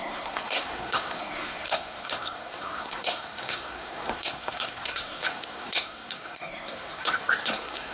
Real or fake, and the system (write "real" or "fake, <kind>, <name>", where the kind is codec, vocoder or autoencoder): fake, codec, SNAC